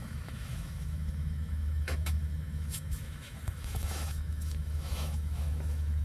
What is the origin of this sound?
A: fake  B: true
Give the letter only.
A